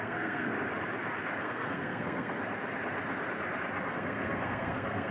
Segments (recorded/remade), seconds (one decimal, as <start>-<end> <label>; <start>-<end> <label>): 0.0-0.5 remade; 0.5-1.4 recorded; 1.4-2.4 remade; 2.4-3.9 recorded; 3.9-5.1 remade